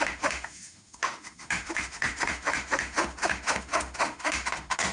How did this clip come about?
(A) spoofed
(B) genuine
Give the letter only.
A